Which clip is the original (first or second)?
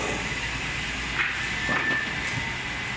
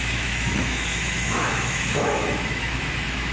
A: first